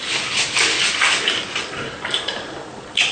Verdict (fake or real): real